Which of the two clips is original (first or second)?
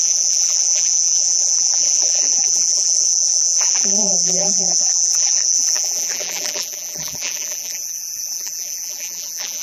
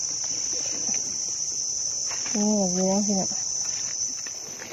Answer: second